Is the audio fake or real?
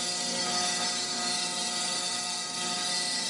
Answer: fake